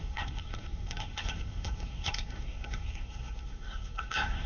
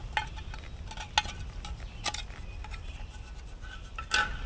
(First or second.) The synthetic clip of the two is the first